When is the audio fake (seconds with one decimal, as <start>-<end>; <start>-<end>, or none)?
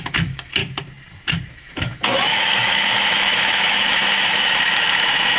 0.0-0.6; 1.5-5.4